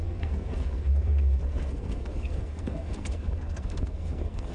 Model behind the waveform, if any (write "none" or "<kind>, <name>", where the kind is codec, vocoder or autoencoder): codec, SNAC